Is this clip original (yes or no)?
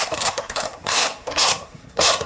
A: no